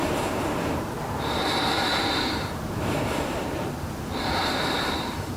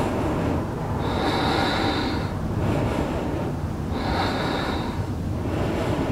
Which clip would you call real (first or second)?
second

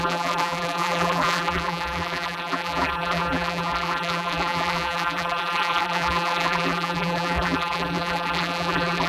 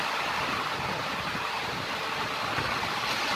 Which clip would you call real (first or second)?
second